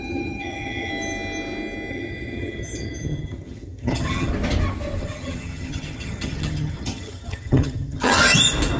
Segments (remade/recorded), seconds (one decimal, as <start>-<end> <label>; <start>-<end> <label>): 0.0-0.9 remade; 0.9-1.9 recorded; 1.9-4.3 remade; 4.3-5.0 recorded; 5.0-8.2 remade; 8.2-8.8 recorded